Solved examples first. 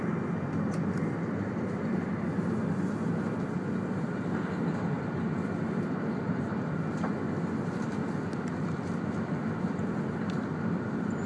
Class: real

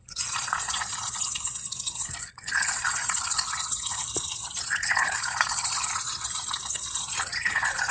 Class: fake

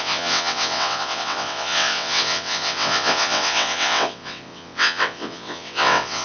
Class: fake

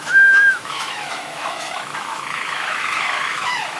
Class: fake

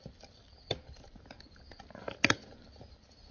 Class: real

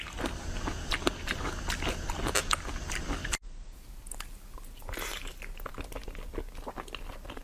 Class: real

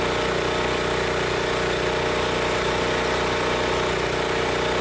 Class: real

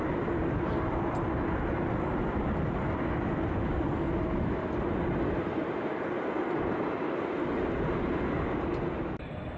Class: real